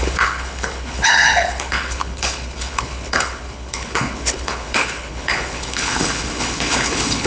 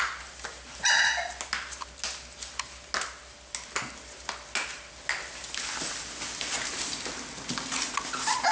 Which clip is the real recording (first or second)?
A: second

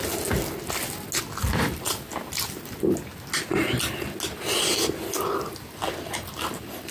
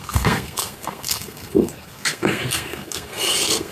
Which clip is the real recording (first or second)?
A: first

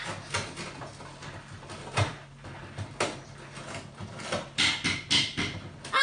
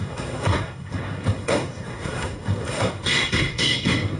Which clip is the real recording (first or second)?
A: first